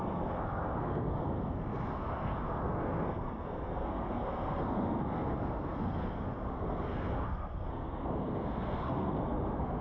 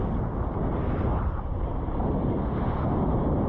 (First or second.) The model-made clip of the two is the first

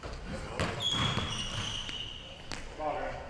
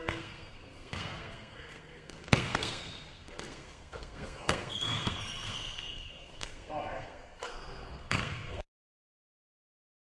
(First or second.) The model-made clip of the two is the second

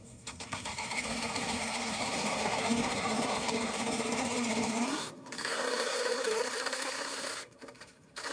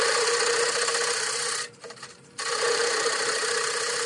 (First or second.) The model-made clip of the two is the first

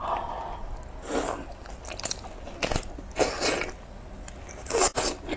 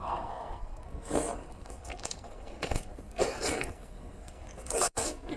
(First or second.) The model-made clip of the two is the second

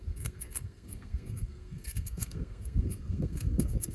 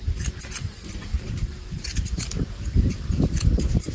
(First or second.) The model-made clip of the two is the first